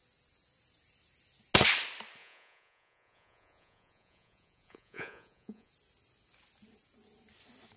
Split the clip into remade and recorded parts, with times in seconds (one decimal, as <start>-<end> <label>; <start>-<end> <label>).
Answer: 0.0-2.2 recorded; 2.2-5.7 remade; 5.7-7.8 recorded